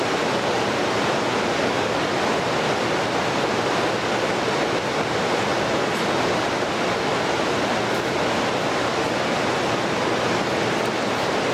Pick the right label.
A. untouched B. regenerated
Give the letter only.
A